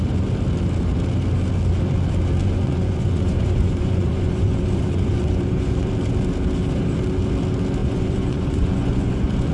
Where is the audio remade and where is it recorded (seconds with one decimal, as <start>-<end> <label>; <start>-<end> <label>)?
0.0-2.4 recorded; 2.4-5.9 remade; 5.9-7.8 recorded; 7.8-9.5 remade